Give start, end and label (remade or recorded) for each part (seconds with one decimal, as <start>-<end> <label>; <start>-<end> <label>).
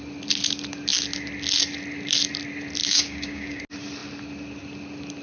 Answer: 0.0-2.8 recorded; 2.8-3.6 remade; 3.6-5.2 recorded